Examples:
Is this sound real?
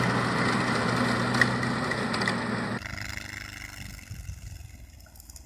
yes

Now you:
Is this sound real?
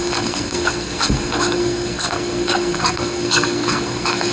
no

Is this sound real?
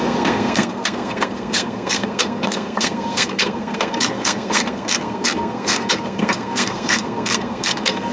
no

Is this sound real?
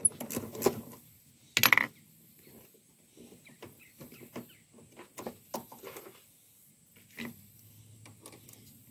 yes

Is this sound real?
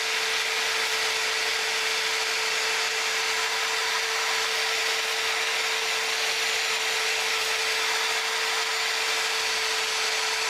yes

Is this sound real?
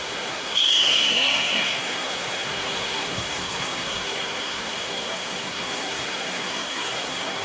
no